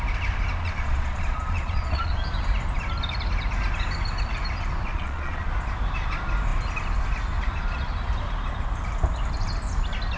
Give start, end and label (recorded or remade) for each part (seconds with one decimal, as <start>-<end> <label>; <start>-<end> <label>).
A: 0.0-0.6 recorded; 0.6-2.1 remade; 2.1-4.9 recorded; 4.9-5.5 remade; 5.5-10.2 recorded